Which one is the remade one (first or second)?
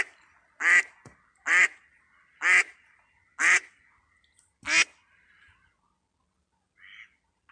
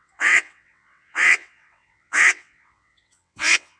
second